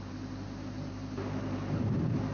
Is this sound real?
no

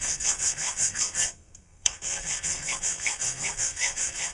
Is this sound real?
no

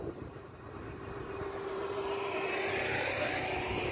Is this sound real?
no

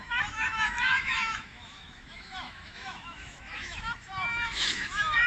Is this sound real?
no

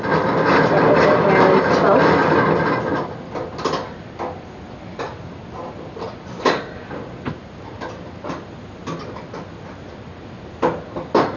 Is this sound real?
yes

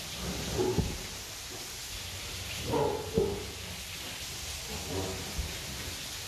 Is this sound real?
yes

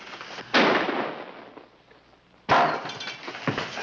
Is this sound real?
yes